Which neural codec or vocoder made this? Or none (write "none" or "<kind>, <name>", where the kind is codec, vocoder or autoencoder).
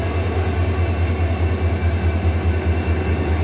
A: none